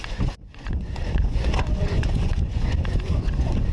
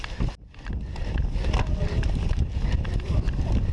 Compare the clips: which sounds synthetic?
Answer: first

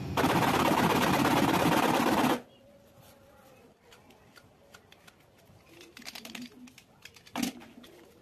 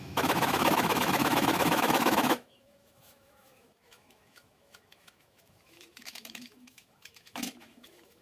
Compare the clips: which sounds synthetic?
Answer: second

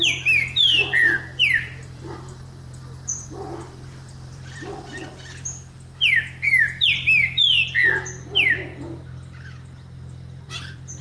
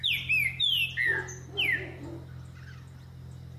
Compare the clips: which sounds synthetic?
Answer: first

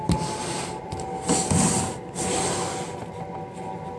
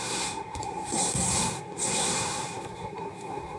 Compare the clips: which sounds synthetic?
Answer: second